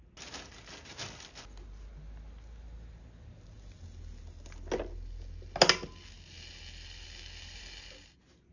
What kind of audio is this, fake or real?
real